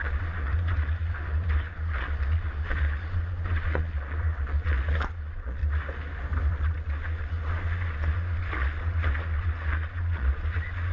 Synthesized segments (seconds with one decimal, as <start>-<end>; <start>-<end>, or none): 0.0-5.6; 6.5-10.9